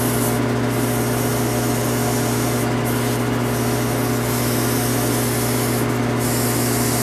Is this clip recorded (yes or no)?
yes